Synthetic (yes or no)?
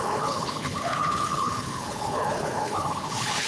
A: yes